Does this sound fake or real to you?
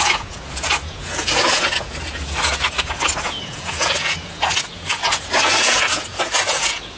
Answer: fake